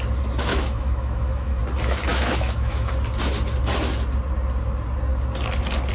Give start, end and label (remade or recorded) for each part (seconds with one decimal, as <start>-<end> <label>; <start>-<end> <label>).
0.0-0.5 recorded; 0.5-1.6 remade; 1.6-2.1 recorded; 2.1-2.9 remade; 2.9-5.9 recorded